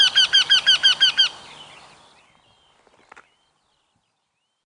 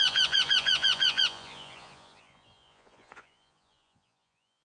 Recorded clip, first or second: first